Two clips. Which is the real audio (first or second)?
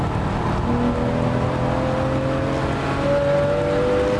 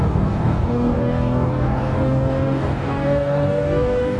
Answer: first